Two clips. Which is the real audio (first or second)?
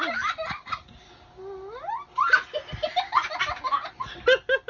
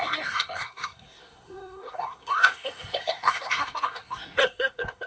first